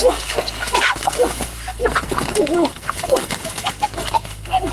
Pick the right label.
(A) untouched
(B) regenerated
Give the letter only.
B